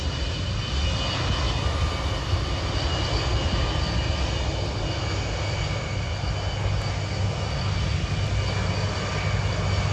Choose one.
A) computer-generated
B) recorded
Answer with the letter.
B